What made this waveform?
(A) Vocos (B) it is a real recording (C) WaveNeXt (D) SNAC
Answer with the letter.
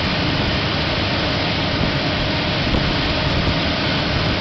B